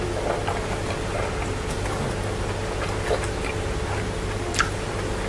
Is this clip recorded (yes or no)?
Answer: yes